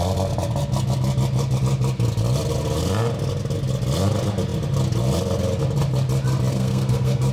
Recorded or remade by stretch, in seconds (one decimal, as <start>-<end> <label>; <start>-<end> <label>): 0.0-6.5 recorded; 6.5-7.3 remade